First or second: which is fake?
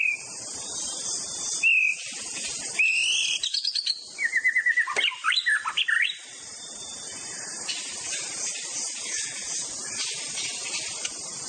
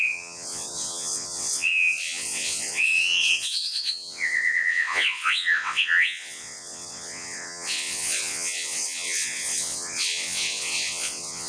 second